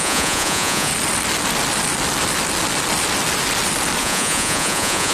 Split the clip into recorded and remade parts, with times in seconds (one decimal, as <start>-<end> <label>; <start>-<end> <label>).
0.0-0.9 remade; 0.9-4.0 recorded; 4.0-5.1 remade